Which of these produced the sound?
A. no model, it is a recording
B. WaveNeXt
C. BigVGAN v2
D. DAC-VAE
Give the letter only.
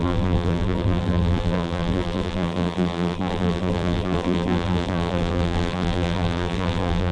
C